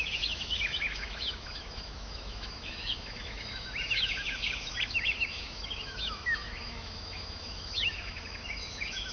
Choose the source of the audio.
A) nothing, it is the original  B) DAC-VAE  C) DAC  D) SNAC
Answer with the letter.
B